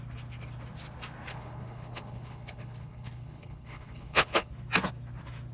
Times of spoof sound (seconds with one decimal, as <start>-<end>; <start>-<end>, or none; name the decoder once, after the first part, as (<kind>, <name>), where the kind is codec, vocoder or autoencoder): 1.3-4.5 (codec, HILCodec)